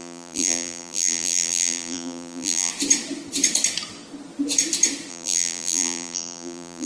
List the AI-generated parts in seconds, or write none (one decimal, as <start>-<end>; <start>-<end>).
0.0-2.7; 5.1-6.9